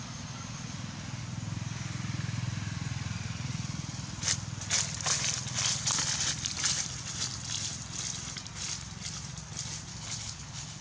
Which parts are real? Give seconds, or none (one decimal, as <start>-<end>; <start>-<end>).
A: 0.0-9.9